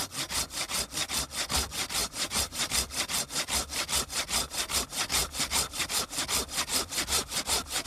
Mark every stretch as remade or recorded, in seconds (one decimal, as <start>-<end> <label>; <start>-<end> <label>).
0.0-2.0 recorded; 2.0-2.7 remade; 2.7-7.9 recorded